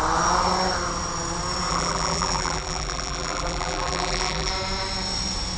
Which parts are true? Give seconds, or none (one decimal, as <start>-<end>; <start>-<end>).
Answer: 0.0-1.7; 4.5-5.6